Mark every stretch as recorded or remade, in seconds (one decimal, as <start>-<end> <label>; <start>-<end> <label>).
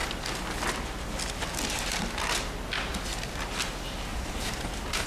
0.0-4.1 recorded; 4.1-5.1 remade